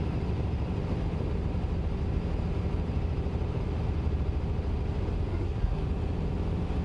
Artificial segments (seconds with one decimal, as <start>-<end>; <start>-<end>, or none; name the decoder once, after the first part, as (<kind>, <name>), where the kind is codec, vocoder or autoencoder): 5.3-5.8 (codec, SNAC)